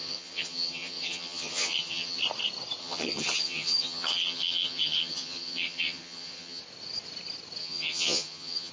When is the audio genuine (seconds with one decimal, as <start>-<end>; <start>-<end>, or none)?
2.2-2.8; 6.6-7.6